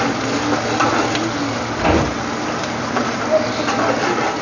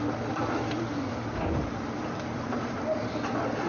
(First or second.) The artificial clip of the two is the second